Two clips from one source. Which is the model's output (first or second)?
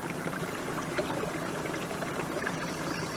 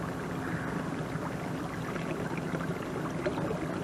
first